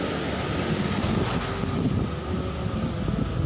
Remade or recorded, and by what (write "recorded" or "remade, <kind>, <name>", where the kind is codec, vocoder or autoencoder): recorded